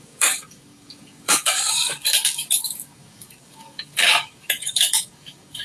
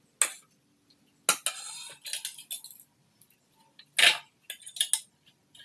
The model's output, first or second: first